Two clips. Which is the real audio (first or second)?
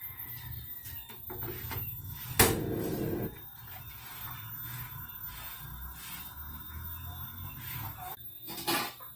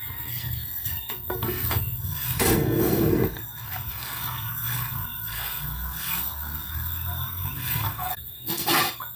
first